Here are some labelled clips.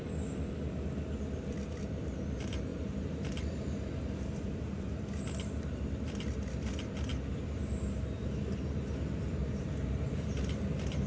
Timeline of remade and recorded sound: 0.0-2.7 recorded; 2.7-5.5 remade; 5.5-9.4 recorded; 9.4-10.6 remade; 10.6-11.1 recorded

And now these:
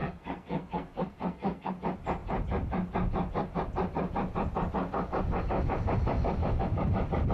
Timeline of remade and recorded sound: 0.0-1.7 remade; 1.7-7.3 recorded

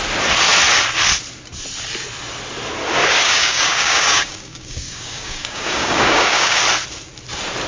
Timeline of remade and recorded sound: 0.0-3.0 recorded; 3.0-6.6 remade; 6.6-7.7 recorded

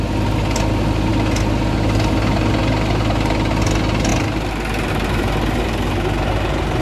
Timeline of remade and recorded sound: 0.0-6.8 recorded

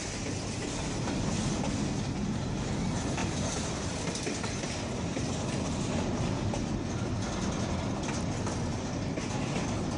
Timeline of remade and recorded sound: 0.0-3.2 recorded; 3.2-3.9 remade; 3.9-10.0 recorded